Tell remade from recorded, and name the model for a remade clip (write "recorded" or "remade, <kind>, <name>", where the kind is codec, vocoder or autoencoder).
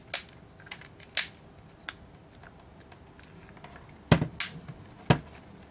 recorded